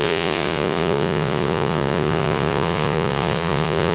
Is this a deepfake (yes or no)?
yes